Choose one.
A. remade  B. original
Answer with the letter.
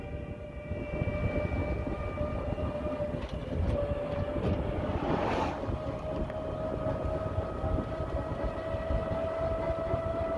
B